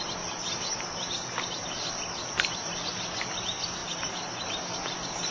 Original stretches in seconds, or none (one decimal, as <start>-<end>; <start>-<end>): 0.0-5.3